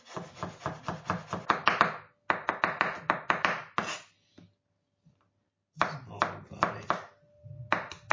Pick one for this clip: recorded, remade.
recorded